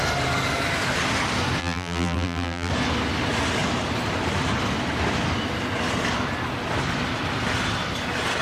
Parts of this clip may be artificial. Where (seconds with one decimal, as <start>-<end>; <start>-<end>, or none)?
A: 1.6-2.7